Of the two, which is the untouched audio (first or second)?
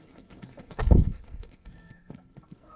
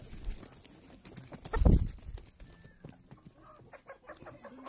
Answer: second